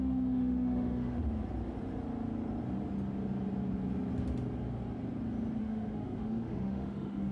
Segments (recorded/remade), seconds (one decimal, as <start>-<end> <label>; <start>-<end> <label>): 0.0-1.2 remade; 1.2-5.6 recorded; 5.6-7.3 remade